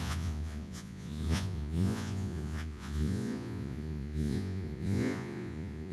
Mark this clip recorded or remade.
remade